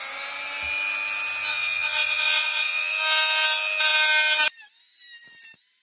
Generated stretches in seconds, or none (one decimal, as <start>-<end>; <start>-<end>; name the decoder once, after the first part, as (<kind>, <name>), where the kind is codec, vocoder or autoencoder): 1.5-2.9 (vocoder, WaveNeXt)